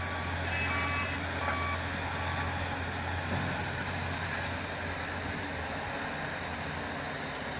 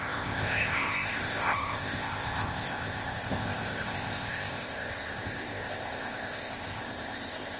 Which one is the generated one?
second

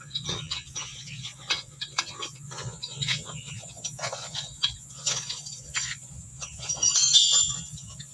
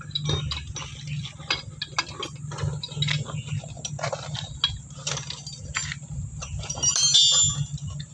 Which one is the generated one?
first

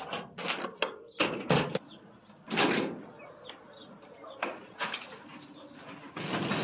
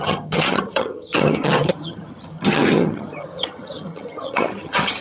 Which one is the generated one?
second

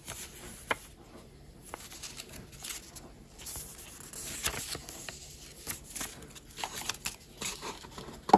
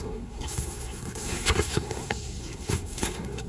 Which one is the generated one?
second